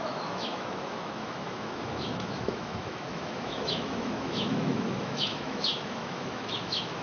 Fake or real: fake